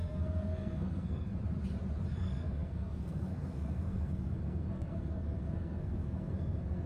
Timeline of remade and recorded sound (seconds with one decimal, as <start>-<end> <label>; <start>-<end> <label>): 0.0-1.3 remade; 1.3-2.1 recorded; 2.1-6.9 remade